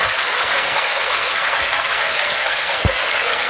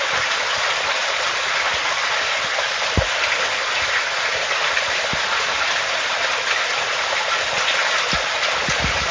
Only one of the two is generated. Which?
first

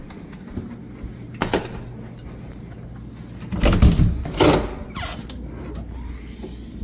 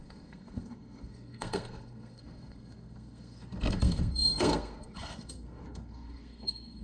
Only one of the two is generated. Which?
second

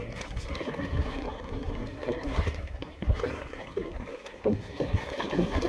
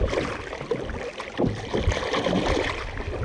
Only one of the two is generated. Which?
first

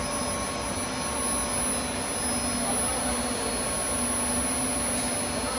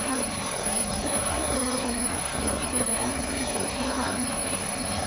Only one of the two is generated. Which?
second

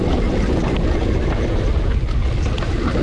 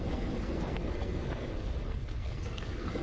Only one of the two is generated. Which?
second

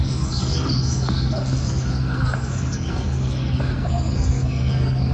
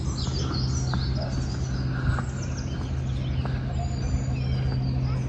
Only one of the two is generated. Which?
first